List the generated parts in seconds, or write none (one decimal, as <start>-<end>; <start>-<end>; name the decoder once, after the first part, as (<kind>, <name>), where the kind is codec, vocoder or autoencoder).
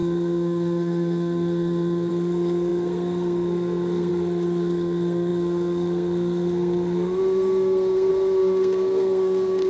0.0-9.7 (codec, SNAC)